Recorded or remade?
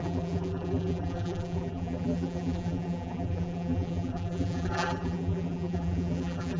remade